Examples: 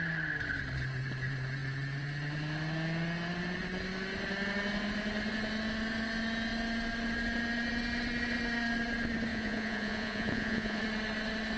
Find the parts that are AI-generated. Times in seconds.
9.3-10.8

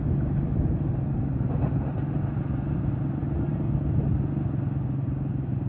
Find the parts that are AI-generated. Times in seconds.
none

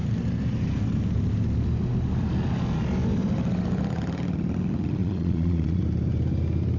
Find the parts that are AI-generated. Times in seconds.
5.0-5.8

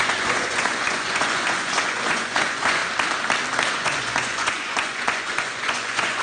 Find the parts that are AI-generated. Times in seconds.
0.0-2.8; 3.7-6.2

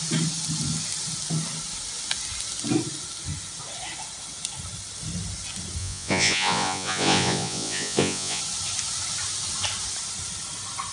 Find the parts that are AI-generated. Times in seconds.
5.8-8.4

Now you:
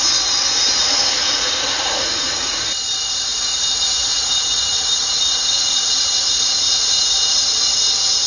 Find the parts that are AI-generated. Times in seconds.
0.8-2.6; 3.3-7.5

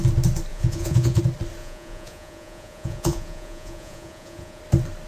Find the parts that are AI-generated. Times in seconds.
0.5-1.2; 1.6-4.6

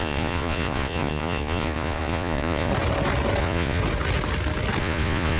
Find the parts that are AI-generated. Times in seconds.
0.0-2.7; 3.4-3.8; 4.8-5.4